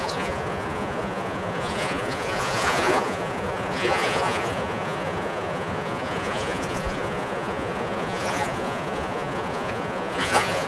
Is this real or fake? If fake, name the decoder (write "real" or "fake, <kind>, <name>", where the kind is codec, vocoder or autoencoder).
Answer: fake, vocoder, Vocos